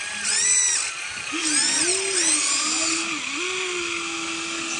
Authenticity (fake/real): real